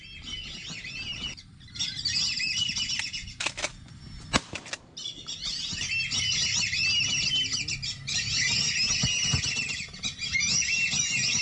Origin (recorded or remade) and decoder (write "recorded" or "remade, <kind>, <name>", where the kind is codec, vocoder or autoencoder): recorded